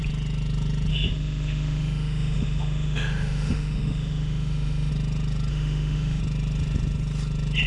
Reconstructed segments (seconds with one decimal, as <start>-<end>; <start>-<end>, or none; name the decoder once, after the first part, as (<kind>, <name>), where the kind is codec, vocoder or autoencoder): 0.9-4.9 (autoencoder, DAC-VAE); 5.5-6.2